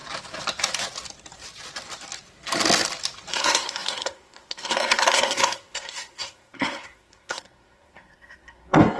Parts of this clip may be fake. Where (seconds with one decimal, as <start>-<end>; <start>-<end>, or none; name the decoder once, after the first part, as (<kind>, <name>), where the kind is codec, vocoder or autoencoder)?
3.3-9.0 (codec, SNAC)